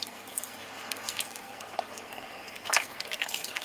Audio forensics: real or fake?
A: fake